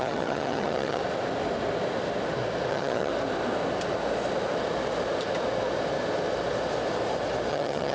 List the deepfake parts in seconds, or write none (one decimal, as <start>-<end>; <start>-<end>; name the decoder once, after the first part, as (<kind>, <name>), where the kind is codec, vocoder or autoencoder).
0.0-1.0 (vocoder, HiFi-GAN); 2.7-3.1; 7.5-7.9